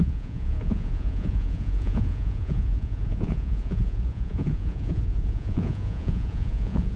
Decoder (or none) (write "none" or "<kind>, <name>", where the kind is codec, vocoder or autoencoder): vocoder, Vocos